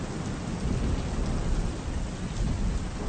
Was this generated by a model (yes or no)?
no